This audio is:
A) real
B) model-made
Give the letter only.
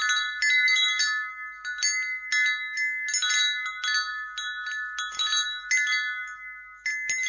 A